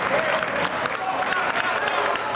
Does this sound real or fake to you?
real